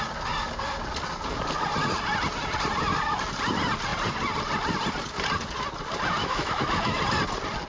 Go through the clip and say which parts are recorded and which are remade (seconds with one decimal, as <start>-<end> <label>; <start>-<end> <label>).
0.0-6.2 recorded; 6.2-7.0 remade; 7.0-7.7 recorded